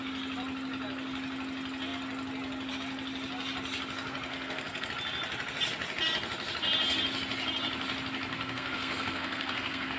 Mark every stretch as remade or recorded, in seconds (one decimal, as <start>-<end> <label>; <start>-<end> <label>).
0.0-4.3 recorded; 4.3-4.9 remade; 4.9-8.3 recorded; 8.3-10.0 remade